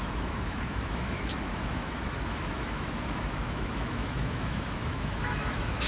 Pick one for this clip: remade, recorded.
remade